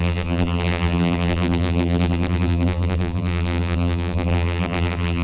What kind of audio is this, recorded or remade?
remade